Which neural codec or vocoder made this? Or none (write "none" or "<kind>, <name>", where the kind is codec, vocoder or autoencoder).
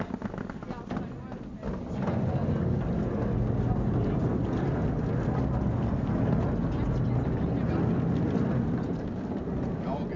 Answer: none